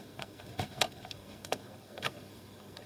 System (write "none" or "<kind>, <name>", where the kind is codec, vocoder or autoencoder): codec, SNAC